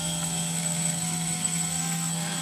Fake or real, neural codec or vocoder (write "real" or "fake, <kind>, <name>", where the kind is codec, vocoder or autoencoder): fake, codec, SNAC